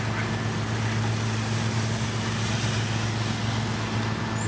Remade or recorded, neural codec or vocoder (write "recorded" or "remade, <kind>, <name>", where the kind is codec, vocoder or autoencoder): recorded